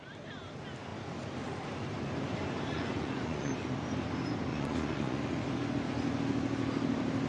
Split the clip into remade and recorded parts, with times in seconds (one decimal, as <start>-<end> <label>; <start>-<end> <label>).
0.0-2.7 recorded; 2.7-3.5 remade; 3.5-4.5 recorded; 4.5-5.2 remade; 5.2-7.3 recorded